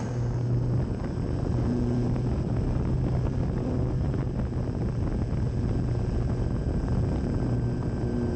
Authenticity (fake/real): real